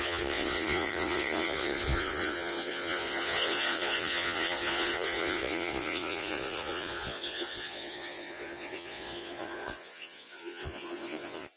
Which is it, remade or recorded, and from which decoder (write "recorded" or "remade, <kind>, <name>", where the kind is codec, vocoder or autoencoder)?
remade, vocoder, Vocos